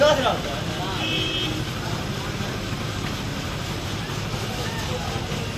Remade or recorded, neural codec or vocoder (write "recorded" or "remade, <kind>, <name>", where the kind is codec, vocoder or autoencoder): recorded